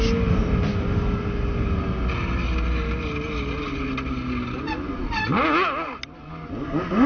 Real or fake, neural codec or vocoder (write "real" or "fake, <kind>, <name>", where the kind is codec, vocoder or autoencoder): real